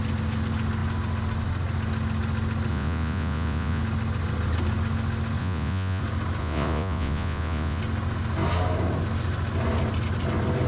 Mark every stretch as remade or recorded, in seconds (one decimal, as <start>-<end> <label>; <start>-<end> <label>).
0.0-2.7 recorded; 2.7-3.8 remade; 3.8-5.4 recorded; 5.4-6.0 remade; 6.0-6.4 recorded; 6.4-7.8 remade; 7.8-10.7 recorded